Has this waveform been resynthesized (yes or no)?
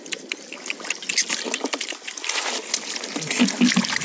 no